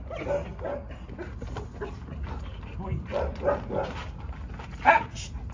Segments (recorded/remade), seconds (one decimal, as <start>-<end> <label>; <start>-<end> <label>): 0.0-5.5 recorded